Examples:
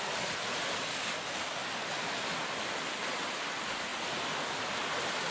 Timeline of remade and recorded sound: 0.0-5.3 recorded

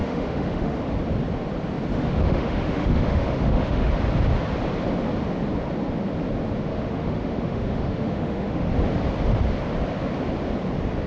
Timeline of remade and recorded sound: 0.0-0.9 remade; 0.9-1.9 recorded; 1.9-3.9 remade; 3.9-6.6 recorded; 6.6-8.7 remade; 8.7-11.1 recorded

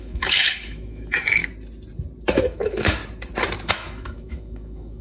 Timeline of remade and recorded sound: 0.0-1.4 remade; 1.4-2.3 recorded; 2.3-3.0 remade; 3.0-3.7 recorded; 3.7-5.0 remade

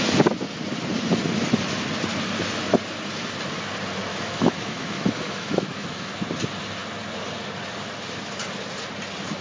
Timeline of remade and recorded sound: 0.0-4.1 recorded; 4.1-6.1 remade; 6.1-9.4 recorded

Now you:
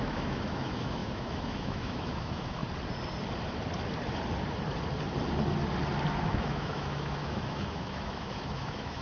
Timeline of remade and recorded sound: 0.0-2.6 remade; 2.6-6.2 recorded; 6.2-9.0 remade

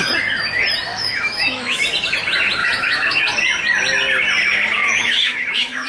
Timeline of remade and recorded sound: 0.0-0.9 recorded; 0.9-1.8 remade; 1.8-2.6 recorded; 2.6-3.2 remade; 3.2-4.8 recorded; 4.8-5.9 remade

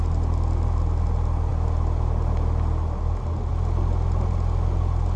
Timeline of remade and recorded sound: 0.0-5.2 recorded

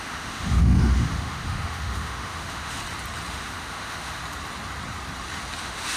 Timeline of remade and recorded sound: 0.0-2.8 remade; 2.8-3.3 recorded; 3.3-4.2 remade; 4.2-5.6 recorded; 5.6-6.0 remade